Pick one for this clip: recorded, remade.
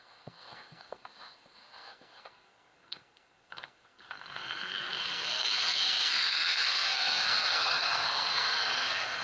remade